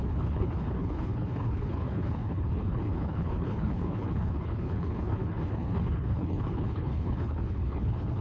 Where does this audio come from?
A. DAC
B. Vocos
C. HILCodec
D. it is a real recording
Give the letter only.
C